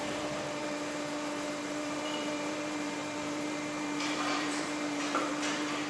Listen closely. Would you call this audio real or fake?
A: fake